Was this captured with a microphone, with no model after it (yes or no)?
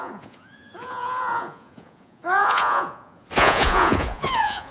no